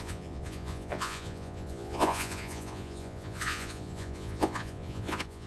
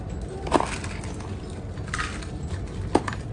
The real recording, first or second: second